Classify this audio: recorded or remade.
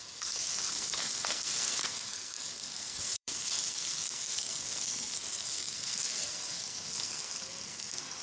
remade